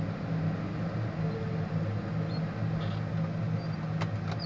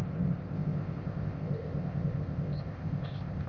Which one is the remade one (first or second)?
second